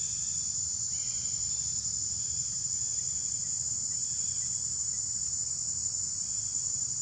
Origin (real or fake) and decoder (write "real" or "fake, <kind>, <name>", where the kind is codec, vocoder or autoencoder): real